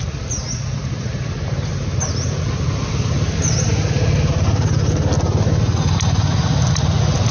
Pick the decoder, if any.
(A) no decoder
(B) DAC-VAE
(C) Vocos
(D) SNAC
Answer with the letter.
A